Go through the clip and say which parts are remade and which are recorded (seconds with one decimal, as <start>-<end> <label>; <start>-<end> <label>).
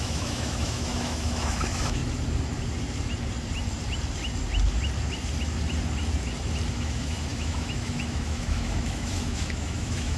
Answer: 0.0-2.0 remade; 2.0-6.7 recorded; 6.7-10.2 remade